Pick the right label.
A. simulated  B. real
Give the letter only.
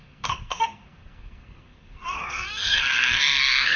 A